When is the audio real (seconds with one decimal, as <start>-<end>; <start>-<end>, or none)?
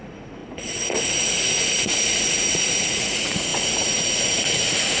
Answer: none